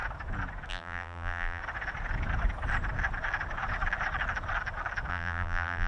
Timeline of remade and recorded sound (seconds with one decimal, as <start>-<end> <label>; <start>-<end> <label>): 0.0-0.7 recorded; 0.7-1.6 remade; 1.6-5.1 recorded; 5.1-5.9 remade